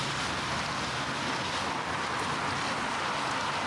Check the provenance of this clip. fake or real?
real